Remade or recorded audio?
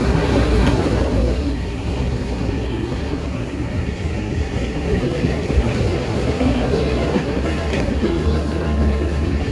remade